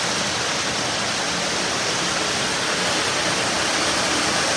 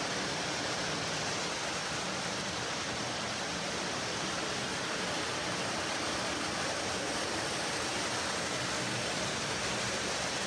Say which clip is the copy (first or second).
second